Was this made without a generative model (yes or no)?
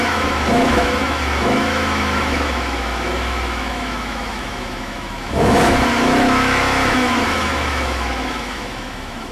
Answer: no